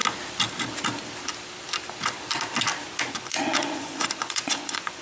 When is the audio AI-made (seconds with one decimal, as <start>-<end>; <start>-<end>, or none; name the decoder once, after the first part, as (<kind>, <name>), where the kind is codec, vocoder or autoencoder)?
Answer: 3.0-5.0 (vocoder, Vocos)